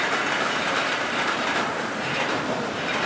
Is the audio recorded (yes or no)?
no